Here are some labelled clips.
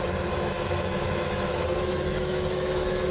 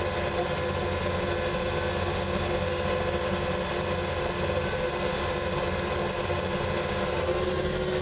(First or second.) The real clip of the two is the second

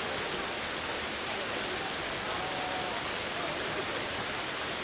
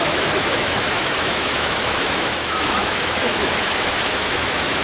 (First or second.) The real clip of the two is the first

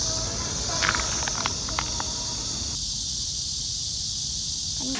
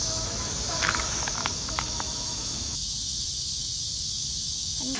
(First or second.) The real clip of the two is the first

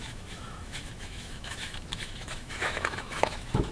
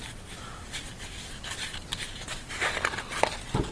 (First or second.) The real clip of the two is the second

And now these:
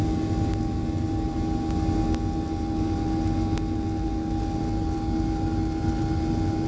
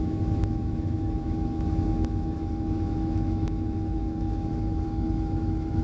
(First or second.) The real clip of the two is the first